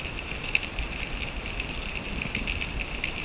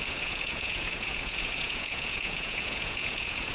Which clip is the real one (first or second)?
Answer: first